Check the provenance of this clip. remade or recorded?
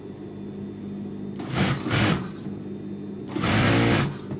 recorded